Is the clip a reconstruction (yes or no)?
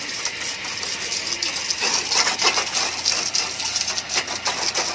no